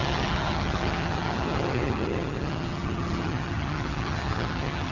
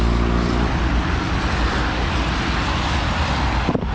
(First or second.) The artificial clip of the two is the first